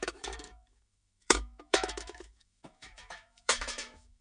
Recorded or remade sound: remade